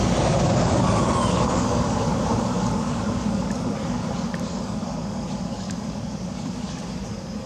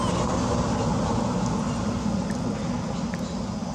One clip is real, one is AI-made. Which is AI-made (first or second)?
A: first